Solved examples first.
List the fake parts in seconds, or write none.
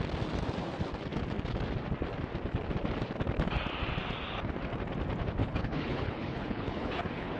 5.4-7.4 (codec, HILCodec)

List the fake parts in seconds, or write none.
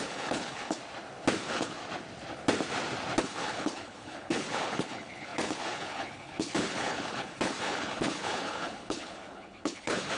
0.0-0.8 (codec, HILCodec); 1.4-1.8; 3.2-10.2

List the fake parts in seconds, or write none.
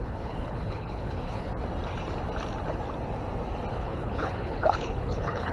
0.0-1.5 (codec, HILCodec); 3.7-5.5